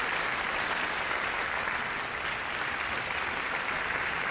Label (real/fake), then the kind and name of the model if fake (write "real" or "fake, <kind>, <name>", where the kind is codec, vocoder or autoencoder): real